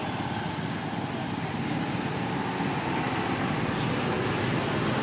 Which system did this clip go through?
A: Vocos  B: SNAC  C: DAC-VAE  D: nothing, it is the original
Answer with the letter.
D